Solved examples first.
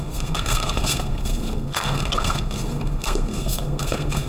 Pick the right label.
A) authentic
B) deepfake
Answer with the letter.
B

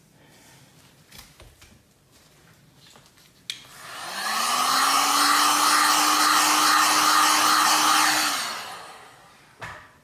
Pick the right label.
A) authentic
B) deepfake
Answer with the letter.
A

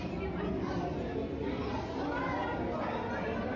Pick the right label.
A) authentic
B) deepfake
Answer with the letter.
A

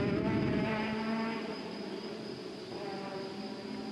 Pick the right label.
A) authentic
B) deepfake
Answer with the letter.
A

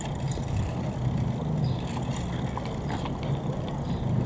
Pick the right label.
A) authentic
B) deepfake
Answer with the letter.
A